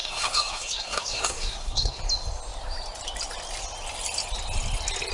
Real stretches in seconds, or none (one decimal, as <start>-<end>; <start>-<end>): 2.0-5.1